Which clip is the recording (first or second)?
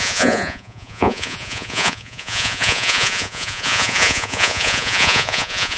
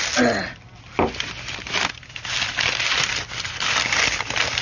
second